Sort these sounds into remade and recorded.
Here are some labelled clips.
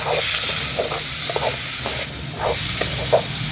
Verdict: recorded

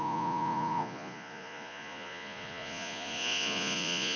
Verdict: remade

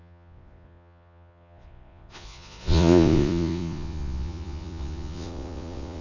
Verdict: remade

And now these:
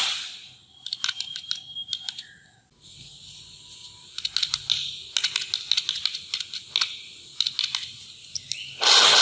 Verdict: recorded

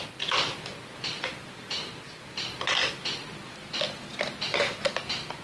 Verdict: recorded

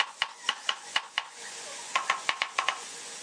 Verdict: remade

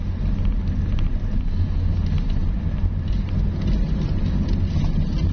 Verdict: recorded